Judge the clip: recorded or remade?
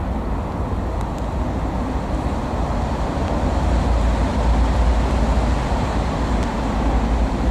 recorded